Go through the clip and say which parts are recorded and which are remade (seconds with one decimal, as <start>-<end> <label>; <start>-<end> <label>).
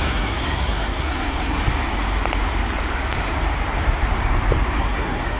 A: 0.0-1.6 remade; 1.6-4.8 recorded; 4.8-5.4 remade